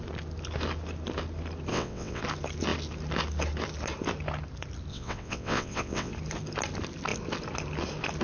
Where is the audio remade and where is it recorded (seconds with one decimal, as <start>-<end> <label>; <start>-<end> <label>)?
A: 0.0-1.7 recorded; 1.7-2.2 remade; 2.2-4.9 recorded; 4.9-6.1 remade; 6.1-8.2 recorded